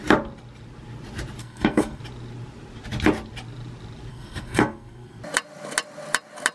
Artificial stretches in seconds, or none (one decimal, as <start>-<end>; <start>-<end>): 1.4-2.0; 4.1-5.2